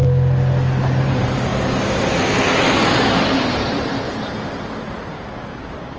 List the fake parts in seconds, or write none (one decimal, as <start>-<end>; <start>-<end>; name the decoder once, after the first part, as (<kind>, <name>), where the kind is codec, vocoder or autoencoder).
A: 1.0-1.5 (vocoder, BigVGAN v2); 3.4-3.9; 4.8-6.0